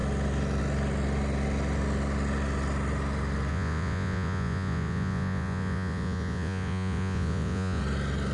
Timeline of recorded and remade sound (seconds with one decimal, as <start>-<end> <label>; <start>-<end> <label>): 0.0-3.5 recorded; 3.5-7.8 remade; 7.8-8.3 recorded